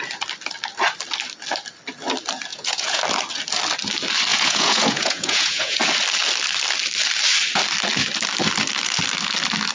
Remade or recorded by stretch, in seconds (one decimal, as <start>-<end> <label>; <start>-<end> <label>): 0.0-2.5 recorded; 2.5-3.0 remade; 3.0-4.3 recorded; 4.3-5.8 remade; 5.8-9.7 recorded